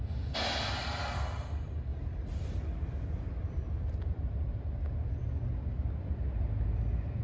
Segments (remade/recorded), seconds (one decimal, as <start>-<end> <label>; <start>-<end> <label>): 0.0-1.9 recorded; 1.9-4.6 remade; 4.6-7.2 recorded